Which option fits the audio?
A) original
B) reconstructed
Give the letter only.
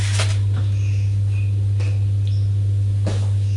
A